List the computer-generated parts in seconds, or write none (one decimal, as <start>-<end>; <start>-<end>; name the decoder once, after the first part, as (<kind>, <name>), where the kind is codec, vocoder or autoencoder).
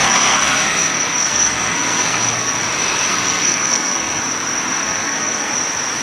0.0-2.6 (codec, SNAC); 3.1-4.2; 4.8-5.5